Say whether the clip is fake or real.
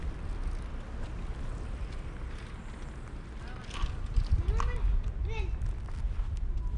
real